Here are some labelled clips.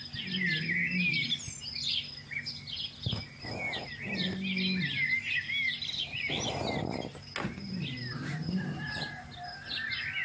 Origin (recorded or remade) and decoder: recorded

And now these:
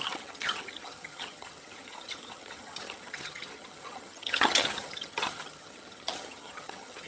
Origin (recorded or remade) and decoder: remade, vocoder, HiFi-GAN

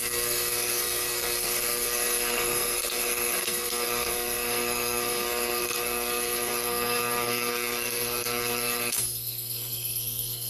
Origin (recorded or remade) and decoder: remade, codec, SNAC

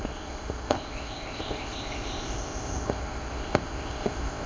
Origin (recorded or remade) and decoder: remade, codec, ZipCodec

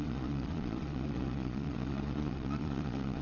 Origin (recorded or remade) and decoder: remade, vocoder, Vocos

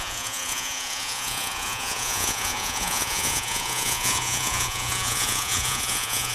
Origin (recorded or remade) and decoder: remade, vocoder, Vocos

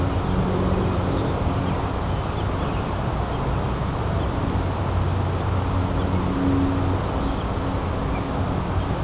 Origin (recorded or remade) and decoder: recorded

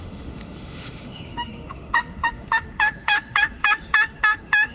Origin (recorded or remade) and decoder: remade, autoencoder, DAC-VAE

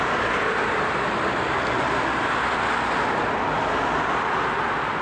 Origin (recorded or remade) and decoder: recorded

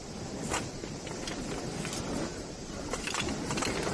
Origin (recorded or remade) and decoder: recorded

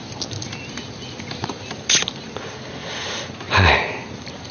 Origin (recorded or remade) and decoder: recorded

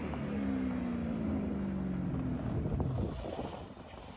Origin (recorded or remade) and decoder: recorded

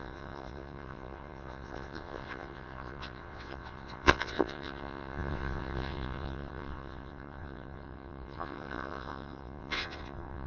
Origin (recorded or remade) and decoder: remade, vocoder, WaveNeXt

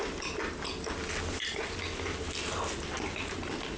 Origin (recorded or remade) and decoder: recorded